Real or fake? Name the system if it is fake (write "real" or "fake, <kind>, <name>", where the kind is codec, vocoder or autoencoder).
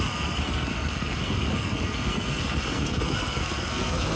fake, codec, SNAC